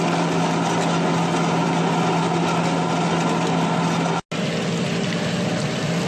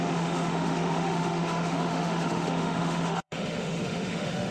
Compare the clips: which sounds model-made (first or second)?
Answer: second